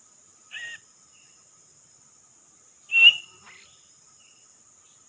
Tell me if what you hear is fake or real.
real